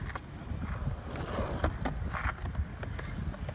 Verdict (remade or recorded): recorded